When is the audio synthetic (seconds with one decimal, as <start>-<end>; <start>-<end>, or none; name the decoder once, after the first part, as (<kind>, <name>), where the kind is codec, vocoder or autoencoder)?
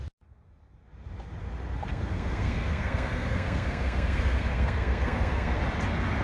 1.9-5.6 (codec, SNAC)